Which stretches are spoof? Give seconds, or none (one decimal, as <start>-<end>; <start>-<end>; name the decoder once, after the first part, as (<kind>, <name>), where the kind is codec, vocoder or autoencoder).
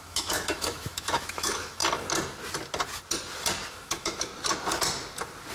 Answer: 0.0-1.8 (autoencoder, DAC-VAE); 3.7-4.3